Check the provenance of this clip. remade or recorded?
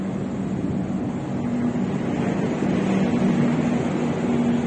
recorded